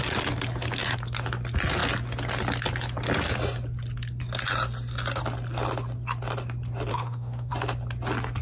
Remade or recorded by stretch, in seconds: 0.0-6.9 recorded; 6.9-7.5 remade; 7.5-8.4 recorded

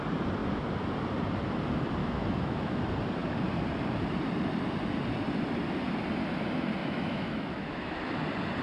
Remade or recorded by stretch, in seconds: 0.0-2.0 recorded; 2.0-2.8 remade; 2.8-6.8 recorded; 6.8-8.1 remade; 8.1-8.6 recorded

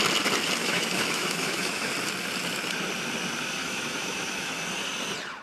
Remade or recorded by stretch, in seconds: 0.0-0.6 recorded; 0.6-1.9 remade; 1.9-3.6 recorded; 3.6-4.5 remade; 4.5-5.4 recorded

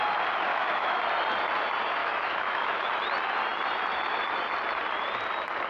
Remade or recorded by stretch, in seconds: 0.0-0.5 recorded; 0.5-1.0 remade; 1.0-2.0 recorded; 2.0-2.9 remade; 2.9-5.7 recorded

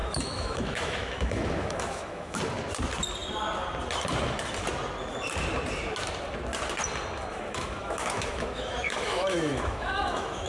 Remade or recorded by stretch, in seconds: 0.0-2.4 remade; 2.4-7.3 recorded; 7.3-10.5 remade

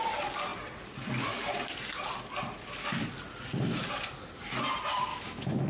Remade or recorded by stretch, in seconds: 0.0-5.1 recorded; 5.1-5.7 remade

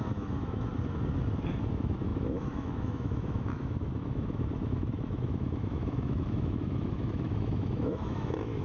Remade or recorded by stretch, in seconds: 0.0-0.7 remade; 0.7-1.6 recorded; 1.6-8.6 remade

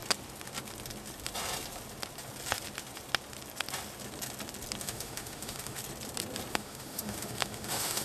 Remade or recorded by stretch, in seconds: 0.0-4.8 recorded; 4.8-5.8 remade; 5.8-6.5 recorded; 6.5-8.0 remade